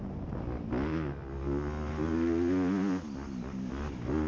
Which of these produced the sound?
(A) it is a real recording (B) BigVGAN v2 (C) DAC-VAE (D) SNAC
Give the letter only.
A